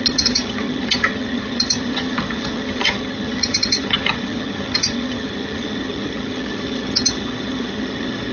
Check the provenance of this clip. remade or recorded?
remade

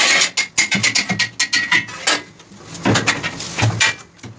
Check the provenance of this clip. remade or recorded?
recorded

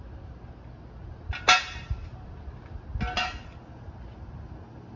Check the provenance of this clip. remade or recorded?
recorded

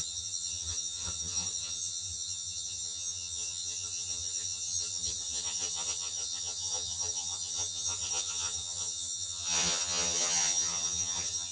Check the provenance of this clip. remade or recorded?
remade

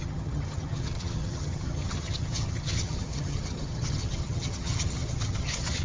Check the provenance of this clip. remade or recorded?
remade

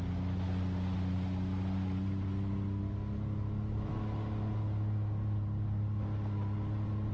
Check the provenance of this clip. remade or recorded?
recorded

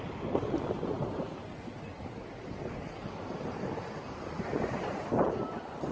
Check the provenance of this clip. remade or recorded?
recorded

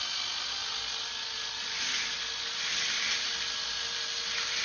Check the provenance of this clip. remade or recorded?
recorded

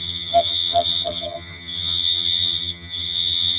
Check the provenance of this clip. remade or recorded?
remade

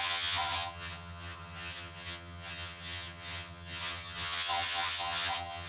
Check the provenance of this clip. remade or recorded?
remade